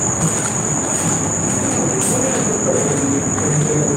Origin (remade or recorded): recorded